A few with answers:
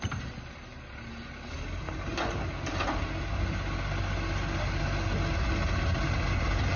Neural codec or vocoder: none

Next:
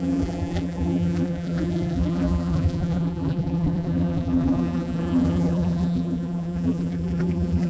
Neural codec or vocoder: vocoder, BigVGAN v2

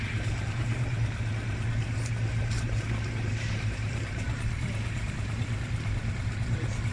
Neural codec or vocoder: vocoder, BigVGAN v2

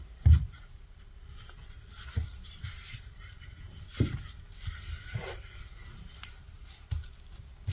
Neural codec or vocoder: vocoder, BigVGAN v2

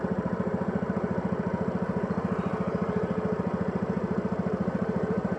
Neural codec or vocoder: vocoder, BigVGAN v2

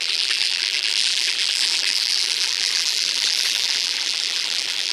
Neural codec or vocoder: vocoder, BigVGAN v2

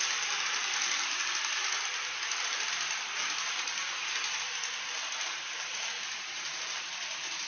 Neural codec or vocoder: vocoder, BigVGAN v2